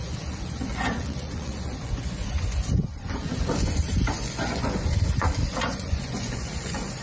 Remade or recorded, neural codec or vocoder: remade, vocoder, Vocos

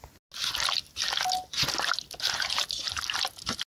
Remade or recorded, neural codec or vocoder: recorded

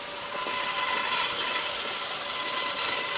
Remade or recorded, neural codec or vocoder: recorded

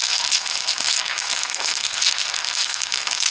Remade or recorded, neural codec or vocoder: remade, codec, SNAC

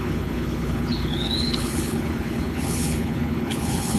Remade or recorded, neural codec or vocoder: remade, codec, HILCodec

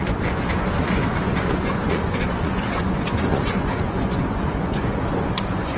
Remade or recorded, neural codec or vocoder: remade, vocoder, Vocos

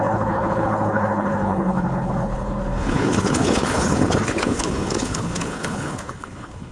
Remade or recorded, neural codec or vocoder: remade, codec, HILCodec